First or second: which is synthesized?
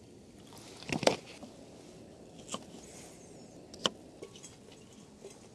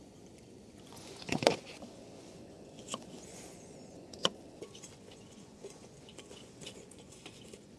second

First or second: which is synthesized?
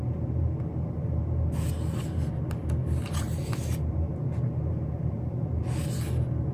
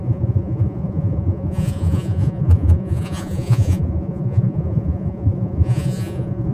second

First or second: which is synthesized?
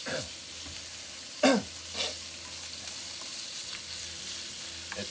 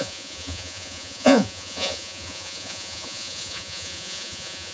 second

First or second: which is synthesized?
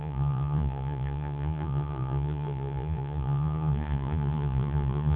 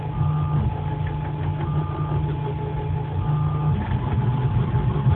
first